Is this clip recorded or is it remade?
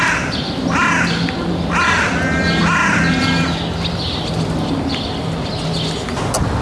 recorded